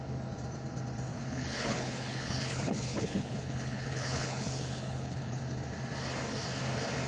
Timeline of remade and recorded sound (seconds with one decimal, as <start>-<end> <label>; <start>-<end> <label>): 0.0-1.1 recorded; 1.1-5.4 remade; 5.4-7.1 recorded